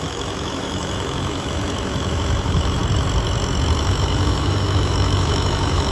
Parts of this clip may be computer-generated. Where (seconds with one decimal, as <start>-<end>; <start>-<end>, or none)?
0.0-2.8; 3.8-5.9